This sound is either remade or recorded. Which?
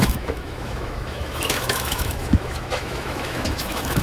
remade